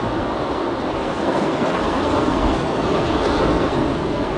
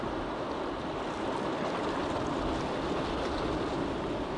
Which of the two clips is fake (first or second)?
first